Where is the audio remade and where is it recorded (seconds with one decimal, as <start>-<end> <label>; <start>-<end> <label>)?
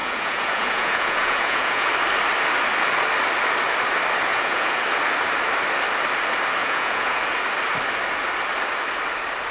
0.0-1.9 remade; 1.9-4.3 recorded; 4.3-4.8 remade; 4.8-6.6 recorded; 6.6-7.2 remade; 7.2-9.5 recorded